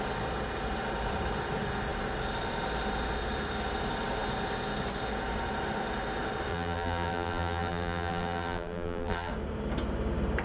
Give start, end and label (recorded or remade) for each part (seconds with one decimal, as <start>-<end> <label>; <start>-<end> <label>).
0.0-6.5 recorded; 6.5-9.3 remade; 9.3-10.4 recorded